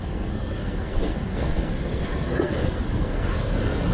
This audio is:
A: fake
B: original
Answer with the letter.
A